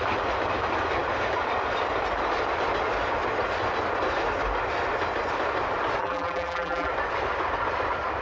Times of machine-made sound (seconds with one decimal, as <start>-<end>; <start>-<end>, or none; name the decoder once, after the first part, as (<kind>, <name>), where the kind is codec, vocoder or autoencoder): 6.0-6.9 (vocoder, BigVGAN v2)